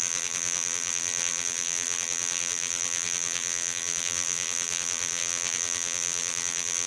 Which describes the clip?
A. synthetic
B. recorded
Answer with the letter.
A